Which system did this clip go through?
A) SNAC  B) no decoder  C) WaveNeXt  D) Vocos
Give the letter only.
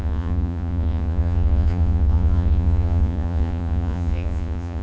D